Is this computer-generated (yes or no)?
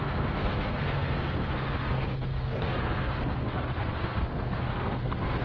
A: yes